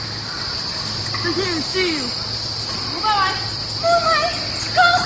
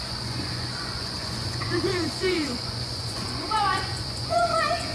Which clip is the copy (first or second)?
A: second